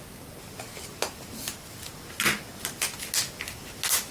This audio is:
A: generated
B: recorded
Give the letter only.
B